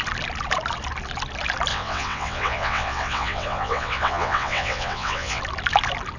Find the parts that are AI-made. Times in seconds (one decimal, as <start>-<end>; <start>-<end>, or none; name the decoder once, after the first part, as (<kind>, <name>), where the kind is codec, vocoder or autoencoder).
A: 1.7-5.4 (vocoder, WaveNeXt)